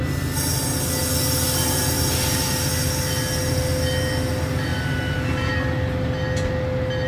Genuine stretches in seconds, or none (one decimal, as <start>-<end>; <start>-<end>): 0.0-7.1